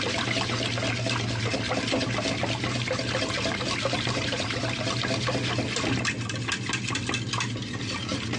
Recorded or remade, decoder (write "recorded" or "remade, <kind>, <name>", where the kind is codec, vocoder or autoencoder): recorded